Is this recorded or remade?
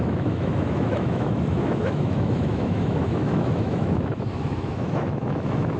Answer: remade